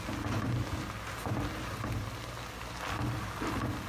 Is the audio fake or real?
real